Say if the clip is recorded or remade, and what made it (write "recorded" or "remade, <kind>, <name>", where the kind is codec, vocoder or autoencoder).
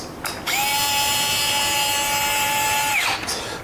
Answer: recorded